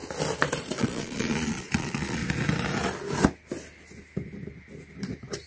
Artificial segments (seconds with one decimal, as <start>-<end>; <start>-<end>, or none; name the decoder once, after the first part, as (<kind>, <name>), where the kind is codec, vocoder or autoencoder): 0.6-2.2 (vocoder, Vocos)